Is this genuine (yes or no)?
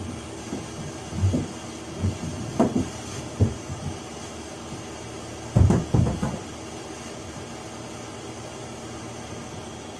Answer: yes